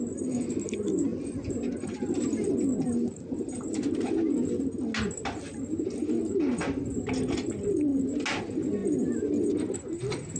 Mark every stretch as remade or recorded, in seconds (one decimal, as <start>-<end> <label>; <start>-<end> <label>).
0.0-10.4 recorded

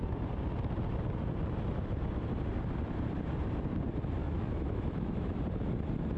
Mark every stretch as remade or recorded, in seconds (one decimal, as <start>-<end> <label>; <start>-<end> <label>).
0.0-4.2 recorded; 4.2-5.3 remade; 5.3-6.2 recorded

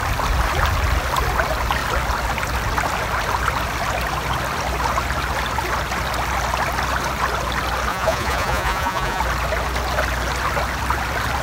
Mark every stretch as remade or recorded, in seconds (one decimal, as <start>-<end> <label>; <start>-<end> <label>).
0.0-7.9 recorded; 7.9-9.2 remade; 9.2-11.4 recorded

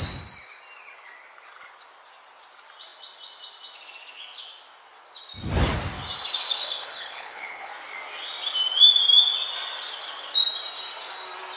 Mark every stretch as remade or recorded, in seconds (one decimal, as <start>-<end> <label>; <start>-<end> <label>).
0.0-6.6 recorded; 6.6-7.7 remade; 7.7-11.6 recorded

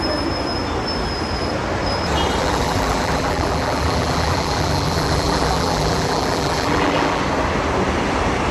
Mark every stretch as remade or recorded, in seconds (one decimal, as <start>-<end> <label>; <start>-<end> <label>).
0.0-2.4 recorded; 2.4-7.2 remade; 7.2-8.5 recorded

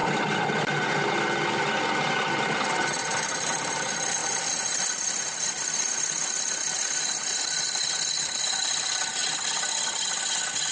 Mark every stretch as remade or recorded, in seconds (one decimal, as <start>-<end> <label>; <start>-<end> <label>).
0.0-10.7 recorded